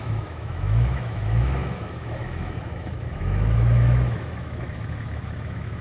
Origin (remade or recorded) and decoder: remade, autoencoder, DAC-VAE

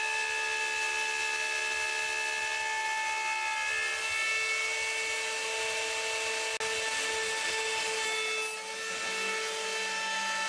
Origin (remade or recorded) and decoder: recorded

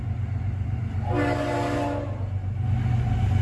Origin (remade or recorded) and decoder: recorded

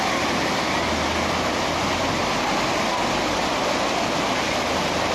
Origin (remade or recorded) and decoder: recorded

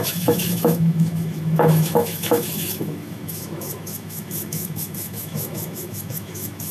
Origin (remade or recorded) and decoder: remade, autoencoder, DAC-VAE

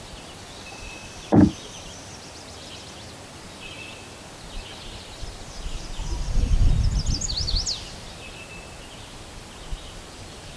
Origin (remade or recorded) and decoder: recorded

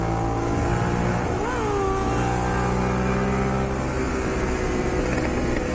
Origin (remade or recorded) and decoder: recorded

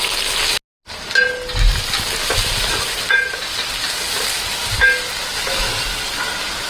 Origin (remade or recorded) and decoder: recorded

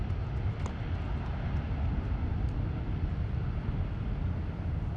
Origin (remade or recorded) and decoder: recorded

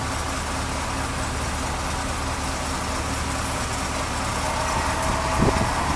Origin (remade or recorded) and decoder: recorded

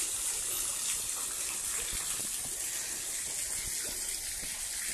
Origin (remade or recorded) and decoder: recorded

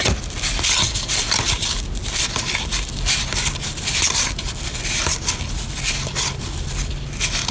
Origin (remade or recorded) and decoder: recorded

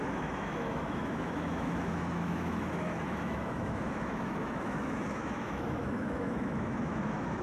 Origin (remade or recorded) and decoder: remade, autoencoder, DAC-VAE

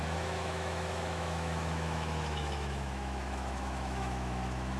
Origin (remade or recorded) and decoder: remade, autoencoder, DAC-VAE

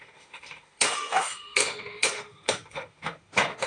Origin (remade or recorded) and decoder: remade, autoencoder, DAC-VAE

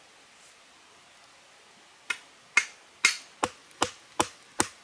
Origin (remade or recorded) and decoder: recorded